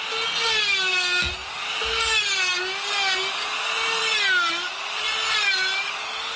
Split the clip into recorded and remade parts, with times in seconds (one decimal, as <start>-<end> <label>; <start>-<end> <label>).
0.0-6.4 recorded